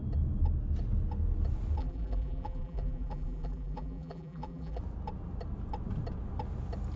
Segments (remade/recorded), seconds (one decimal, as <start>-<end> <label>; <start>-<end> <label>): 0.0-1.8 recorded; 1.8-4.8 remade; 4.8-7.0 recorded